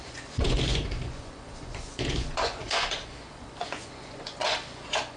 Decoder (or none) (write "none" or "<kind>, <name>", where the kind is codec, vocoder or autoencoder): vocoder, Vocos